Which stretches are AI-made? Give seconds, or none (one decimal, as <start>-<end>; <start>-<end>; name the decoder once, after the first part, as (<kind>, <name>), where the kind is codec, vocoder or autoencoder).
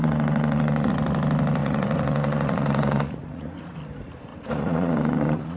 0.0-0.9 (vocoder, Vocos); 1.6-3.8; 4.3-5.6